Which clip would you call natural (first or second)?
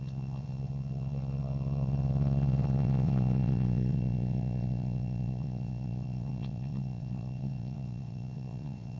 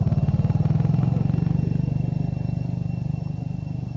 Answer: second